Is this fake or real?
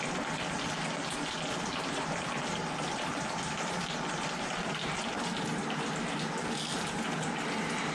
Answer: real